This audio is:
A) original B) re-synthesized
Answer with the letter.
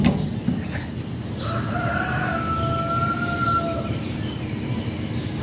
A